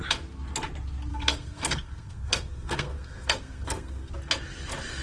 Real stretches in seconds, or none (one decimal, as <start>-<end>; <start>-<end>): 0.0-1.1; 4.1-5.0